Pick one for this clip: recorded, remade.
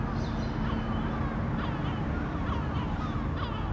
recorded